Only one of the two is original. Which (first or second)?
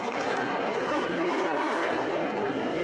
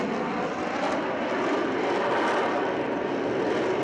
second